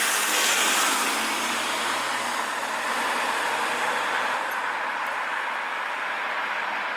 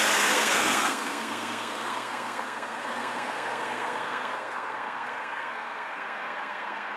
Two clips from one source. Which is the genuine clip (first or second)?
first